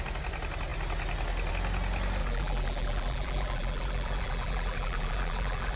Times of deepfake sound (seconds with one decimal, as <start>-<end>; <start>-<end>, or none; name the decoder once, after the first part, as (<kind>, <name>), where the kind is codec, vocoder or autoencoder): 2.2-5.8 (vocoder, BigVGAN v2)